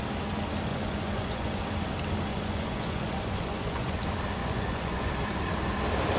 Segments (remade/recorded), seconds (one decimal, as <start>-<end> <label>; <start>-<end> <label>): 0.0-0.7 recorded; 0.7-1.6 remade; 1.6-2.3 recorded; 2.3-4.0 remade; 4.0-4.4 recorded; 4.4-5.1 remade; 5.1-6.2 recorded